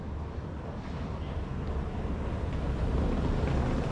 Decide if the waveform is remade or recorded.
recorded